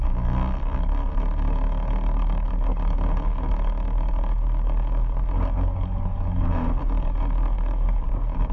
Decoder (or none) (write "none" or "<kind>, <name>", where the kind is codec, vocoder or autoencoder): codec, DAC